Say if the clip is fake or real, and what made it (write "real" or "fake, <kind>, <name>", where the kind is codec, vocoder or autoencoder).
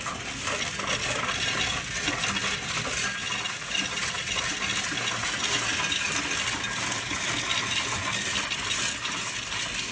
real